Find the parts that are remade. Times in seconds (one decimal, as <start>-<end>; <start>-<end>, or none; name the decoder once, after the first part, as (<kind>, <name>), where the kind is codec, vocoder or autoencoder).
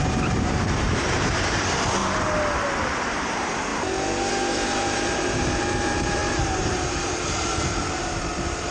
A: 0.0-2.0 (vocoder, BigVGAN v2); 2.9-3.7; 4.3-8.7